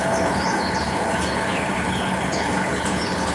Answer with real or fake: fake